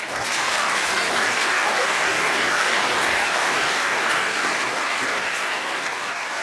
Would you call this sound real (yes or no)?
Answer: no